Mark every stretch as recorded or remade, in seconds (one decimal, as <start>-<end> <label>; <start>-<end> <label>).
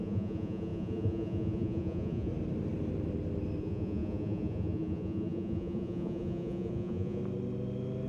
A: 0.0-2.3 remade; 2.3-3.6 recorded; 3.6-7.2 remade; 7.2-8.1 recorded